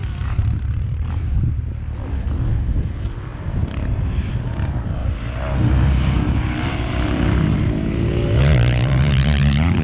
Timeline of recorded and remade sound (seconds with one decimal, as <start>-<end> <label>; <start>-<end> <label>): 0.0-1.6 remade; 1.6-3.3 recorded; 3.3-4.0 remade; 4.0-5.0 recorded; 5.0-9.8 remade